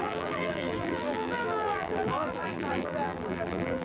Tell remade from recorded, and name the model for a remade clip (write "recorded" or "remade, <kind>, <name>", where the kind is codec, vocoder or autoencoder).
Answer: remade, vocoder, BigVGAN v2